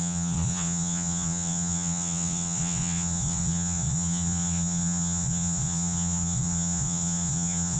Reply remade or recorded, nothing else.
remade